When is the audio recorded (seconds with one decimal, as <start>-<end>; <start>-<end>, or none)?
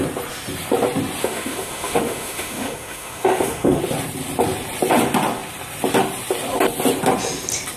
0.0-1.2; 3.8-7.8